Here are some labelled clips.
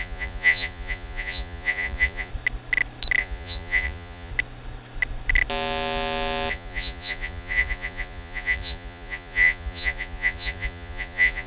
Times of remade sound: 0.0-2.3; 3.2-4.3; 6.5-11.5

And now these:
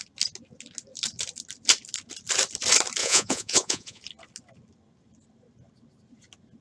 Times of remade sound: 3.0-4.0

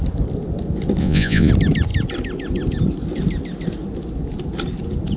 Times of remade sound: 1.0-1.5

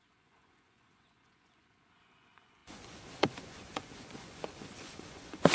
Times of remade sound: 0.0-5.5

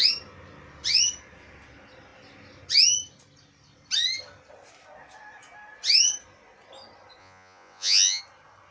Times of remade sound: 7.2-8.2

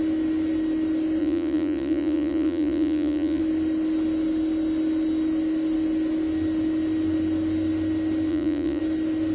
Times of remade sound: 1.2-3.4; 8.3-8.8